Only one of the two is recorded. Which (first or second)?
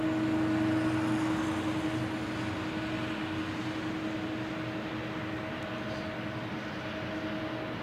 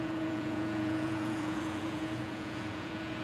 first